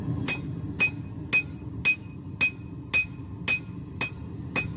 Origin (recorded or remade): recorded